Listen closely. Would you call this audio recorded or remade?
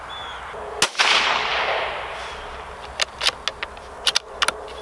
recorded